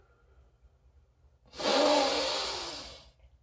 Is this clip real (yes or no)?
yes